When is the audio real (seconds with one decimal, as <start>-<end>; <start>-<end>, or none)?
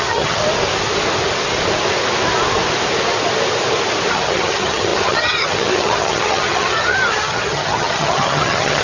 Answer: 0.4-4.1